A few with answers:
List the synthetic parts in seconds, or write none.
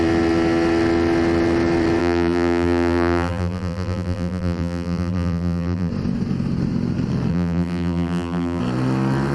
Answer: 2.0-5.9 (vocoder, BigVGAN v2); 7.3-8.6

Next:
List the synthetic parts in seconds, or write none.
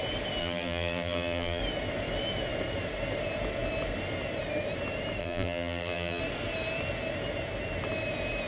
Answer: 0.4-1.6 (vocoder, BigVGAN v2); 5.2-6.2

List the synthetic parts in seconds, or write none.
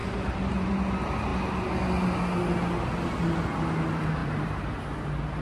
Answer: 0.0-0.7 (vocoder, BigVGAN v2); 4.2-5.4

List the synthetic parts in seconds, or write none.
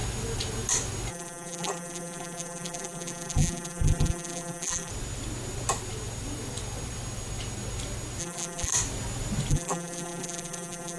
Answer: 1.1-4.9 (vocoder, BigVGAN v2); 8.2-8.7; 9.5-11.0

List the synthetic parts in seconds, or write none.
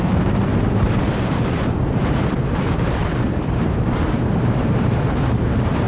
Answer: 0.0-5.9 (vocoder, BigVGAN v2)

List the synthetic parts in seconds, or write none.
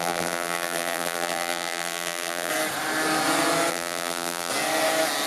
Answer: 0.0-2.5 (vocoder, BigVGAN v2); 3.7-4.5